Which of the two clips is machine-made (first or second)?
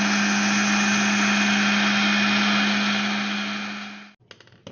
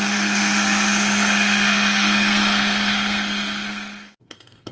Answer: second